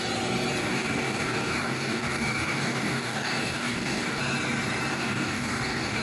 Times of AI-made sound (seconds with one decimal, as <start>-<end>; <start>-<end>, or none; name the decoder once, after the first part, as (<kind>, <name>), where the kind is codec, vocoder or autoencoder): 0.6-4.2 (codec, DAC); 4.9-6.0